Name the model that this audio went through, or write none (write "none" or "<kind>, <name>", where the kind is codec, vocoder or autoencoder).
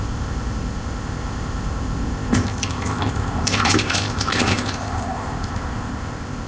codec, ZipCodec